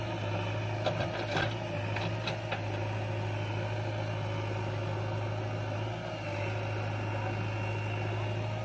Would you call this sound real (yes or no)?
yes